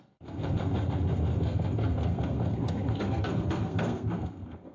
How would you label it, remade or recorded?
remade